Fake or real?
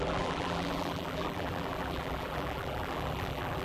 fake